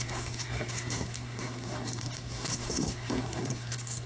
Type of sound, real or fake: fake